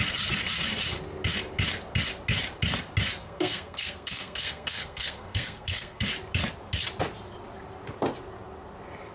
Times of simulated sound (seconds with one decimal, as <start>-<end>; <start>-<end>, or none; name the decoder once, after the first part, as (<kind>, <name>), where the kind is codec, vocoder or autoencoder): 3.2-6.1 (codec, SNAC)